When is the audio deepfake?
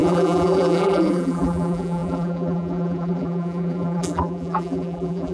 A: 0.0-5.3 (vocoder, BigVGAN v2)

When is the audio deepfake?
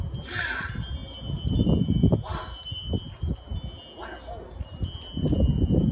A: none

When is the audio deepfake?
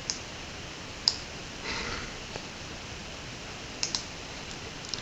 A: 0.0-5.0 (vocoder, BigVGAN v2)